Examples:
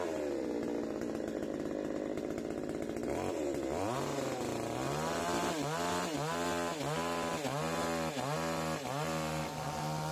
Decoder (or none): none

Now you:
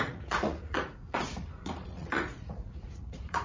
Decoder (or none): vocoder, Vocos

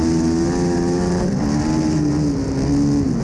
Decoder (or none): none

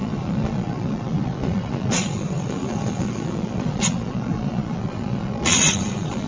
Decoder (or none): vocoder, Vocos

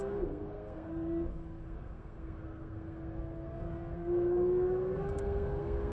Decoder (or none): codec, SNAC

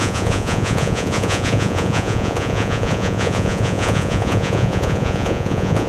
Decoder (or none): vocoder, Vocos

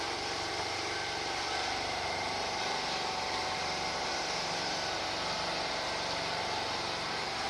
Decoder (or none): vocoder, BigVGAN v2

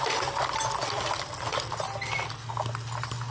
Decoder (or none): none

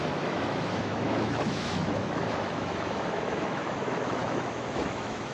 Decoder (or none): autoencoder, DAC-VAE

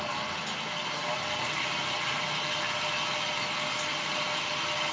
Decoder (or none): none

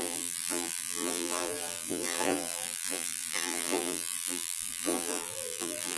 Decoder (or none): vocoder, BigVGAN v2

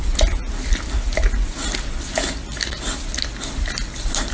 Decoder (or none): none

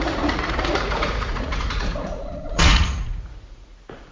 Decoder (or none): vocoder, Vocos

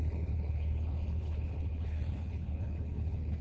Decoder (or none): codec, HILCodec